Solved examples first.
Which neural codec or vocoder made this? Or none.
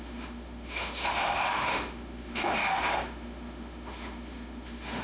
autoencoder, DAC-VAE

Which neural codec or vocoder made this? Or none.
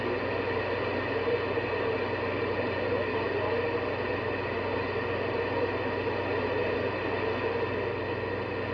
none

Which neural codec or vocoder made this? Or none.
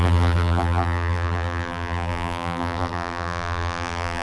vocoder, BigVGAN v2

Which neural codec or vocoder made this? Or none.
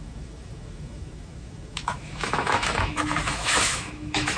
autoencoder, DAC-VAE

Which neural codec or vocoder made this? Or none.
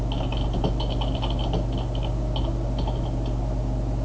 none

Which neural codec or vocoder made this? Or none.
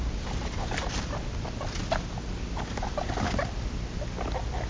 none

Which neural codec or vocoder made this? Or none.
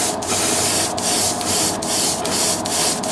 none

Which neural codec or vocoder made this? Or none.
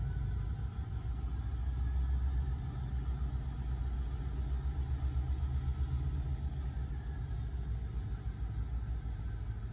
none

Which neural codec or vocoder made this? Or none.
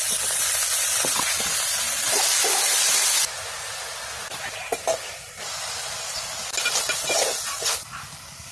none